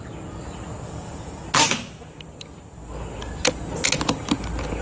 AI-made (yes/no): no